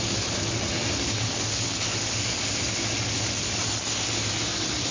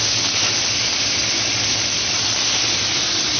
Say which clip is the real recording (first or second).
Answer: first